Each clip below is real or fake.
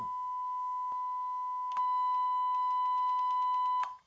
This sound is fake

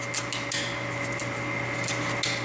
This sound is real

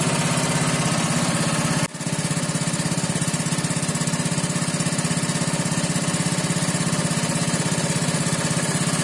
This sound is real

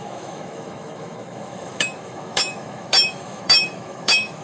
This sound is fake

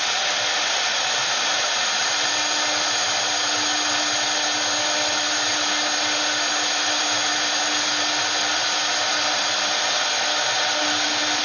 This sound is real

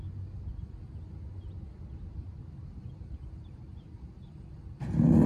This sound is real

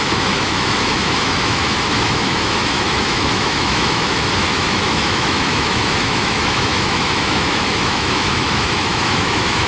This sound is fake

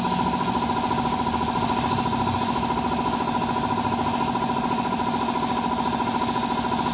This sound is real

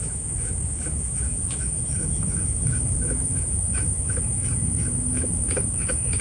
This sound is fake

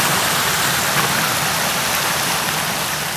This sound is real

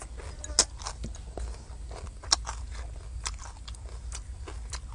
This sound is real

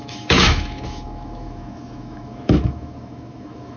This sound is fake